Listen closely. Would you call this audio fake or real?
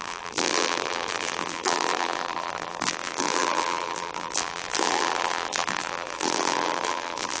fake